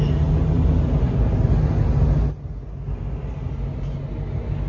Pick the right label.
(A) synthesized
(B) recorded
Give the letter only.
B